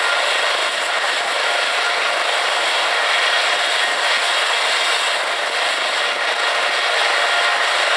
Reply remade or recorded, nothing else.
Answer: recorded